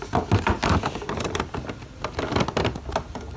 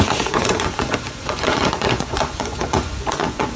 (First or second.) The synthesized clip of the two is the second